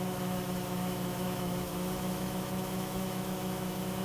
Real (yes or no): no